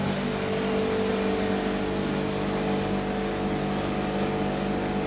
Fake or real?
real